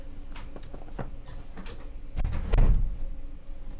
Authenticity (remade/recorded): recorded